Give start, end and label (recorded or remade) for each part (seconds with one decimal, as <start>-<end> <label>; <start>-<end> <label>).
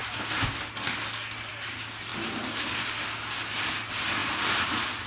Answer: 0.0-5.1 recorded